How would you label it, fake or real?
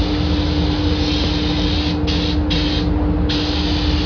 real